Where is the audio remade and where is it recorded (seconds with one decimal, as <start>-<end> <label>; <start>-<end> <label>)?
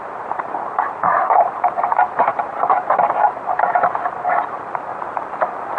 0.0-4.9 remade; 4.9-5.8 recorded